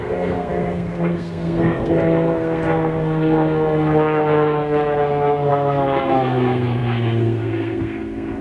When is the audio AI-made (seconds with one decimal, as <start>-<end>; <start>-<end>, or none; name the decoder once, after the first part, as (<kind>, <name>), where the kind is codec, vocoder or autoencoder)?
0.0-8.4 (codec, SNAC)